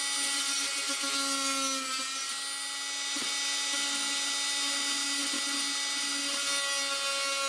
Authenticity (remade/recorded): recorded